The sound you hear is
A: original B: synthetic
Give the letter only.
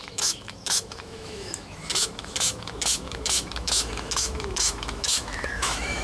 B